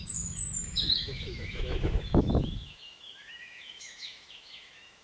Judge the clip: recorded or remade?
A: remade